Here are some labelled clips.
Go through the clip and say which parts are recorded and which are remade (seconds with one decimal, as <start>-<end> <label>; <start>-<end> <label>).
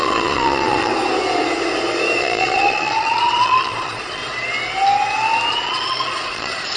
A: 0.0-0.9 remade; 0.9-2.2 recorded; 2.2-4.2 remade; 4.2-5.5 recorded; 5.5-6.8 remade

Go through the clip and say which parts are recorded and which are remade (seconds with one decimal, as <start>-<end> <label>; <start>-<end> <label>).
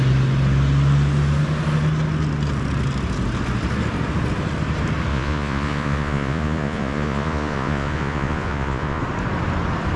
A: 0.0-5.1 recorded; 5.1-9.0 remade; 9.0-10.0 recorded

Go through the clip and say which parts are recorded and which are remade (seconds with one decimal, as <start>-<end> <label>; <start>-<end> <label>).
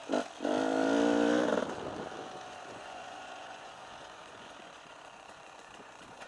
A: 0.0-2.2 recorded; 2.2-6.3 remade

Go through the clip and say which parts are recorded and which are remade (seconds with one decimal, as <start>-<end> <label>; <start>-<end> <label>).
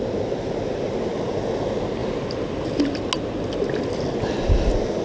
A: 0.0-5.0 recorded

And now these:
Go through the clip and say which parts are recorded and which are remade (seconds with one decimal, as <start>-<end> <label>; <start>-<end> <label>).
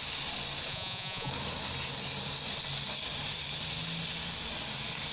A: 0.0-0.7 recorded; 0.7-1.3 remade; 1.3-5.1 recorded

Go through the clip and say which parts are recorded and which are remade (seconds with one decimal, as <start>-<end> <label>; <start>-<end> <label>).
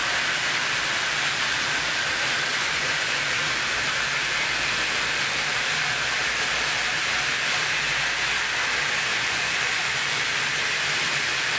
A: 0.0-2.5 recorded; 2.5-3.2 remade; 3.2-9.1 recorded; 9.1-10.2 remade; 10.2-11.6 recorded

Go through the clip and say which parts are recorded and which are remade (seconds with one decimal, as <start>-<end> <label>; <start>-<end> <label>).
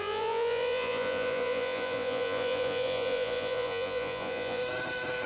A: 0.0-4.6 remade; 4.6-5.3 recorded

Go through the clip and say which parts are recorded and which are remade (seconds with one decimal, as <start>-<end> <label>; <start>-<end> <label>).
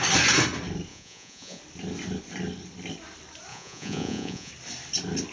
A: 0.0-0.9 recorded; 0.9-1.6 remade; 1.6-3.5 recorded; 3.5-4.5 remade; 4.5-5.3 recorded